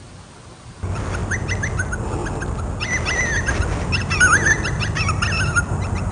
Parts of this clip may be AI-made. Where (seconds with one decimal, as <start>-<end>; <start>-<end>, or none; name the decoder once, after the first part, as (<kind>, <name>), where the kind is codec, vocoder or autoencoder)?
none